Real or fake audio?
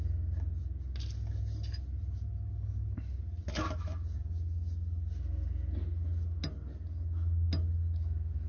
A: real